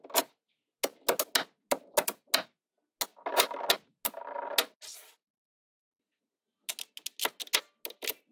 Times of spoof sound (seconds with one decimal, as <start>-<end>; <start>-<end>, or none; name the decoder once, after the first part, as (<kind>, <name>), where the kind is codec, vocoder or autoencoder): none